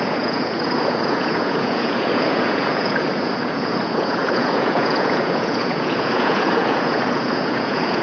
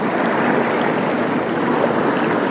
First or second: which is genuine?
second